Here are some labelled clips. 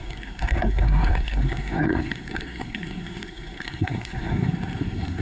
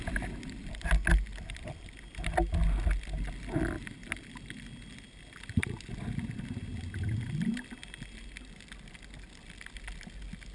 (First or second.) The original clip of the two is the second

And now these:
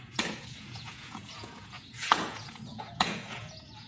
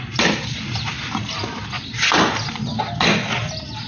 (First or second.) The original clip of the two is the second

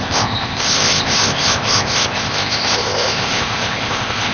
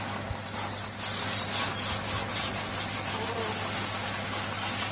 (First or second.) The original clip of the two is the second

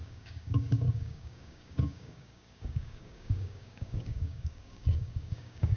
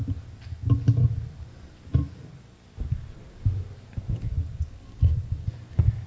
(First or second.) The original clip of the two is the second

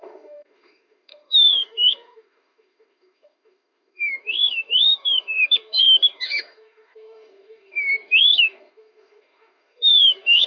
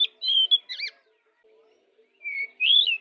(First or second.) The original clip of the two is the second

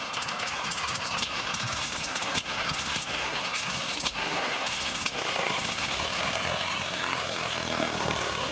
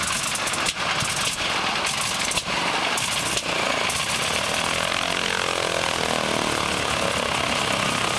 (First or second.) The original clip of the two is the second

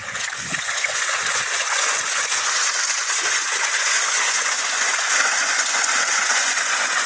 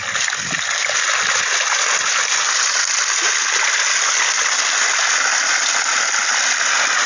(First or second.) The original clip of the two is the second